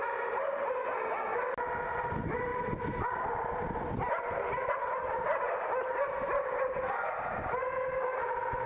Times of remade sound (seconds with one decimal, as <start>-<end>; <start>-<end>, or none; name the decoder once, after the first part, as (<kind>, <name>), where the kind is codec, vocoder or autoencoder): 2.5-4.7 (vocoder, BigVGAN v2)